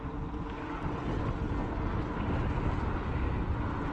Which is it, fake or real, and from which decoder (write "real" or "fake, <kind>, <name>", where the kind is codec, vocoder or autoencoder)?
real